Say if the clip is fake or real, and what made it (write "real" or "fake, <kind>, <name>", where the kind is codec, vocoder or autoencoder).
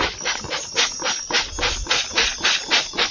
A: real